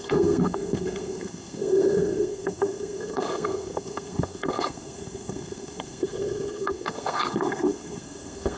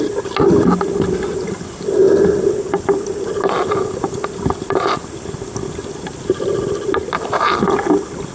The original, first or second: second